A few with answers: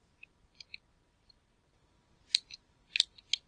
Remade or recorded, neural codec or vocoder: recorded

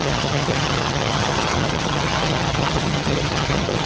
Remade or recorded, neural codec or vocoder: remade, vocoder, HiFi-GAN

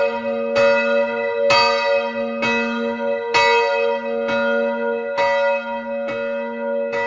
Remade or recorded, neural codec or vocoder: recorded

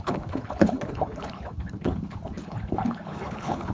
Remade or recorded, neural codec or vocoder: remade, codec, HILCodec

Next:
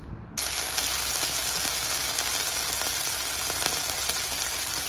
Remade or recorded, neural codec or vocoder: recorded